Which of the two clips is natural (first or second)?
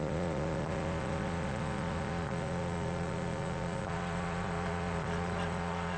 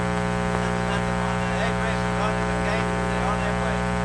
second